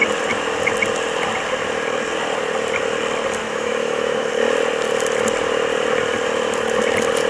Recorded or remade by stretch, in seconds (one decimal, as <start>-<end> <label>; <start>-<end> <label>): 0.0-3.4 recorded; 3.4-4.3 remade; 4.3-7.3 recorded